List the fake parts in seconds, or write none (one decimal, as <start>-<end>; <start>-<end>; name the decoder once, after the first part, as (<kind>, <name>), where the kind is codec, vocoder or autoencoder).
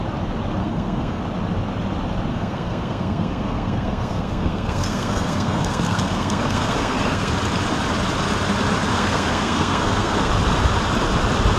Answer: 0.6-1.2 (codec, SNAC); 2.3-7.3; 8.9-10.3